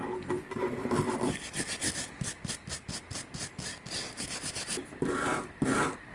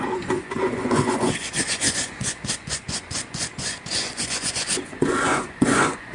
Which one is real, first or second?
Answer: first